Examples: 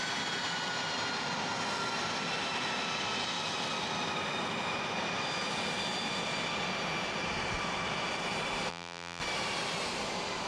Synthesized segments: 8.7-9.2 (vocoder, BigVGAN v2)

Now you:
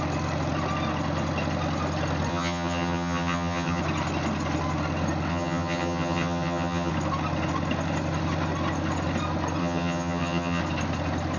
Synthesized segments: 2.3-3.8 (vocoder, HiFi-GAN); 5.3-6.9; 9.6-10.6

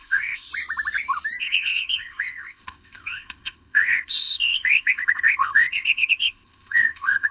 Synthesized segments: 0.0-0.5 (codec, ZipCodec); 1.4-7.3

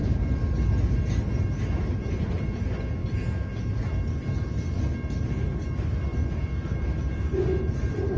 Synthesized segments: none

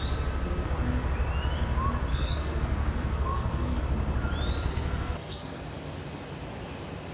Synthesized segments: 2.1-3.8 (codec, SNAC); 4.7-5.6